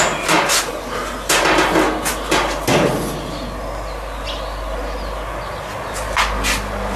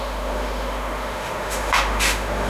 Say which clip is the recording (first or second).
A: first